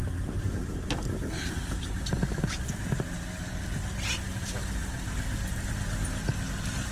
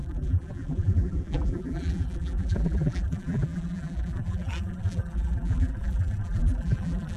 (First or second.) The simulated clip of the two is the second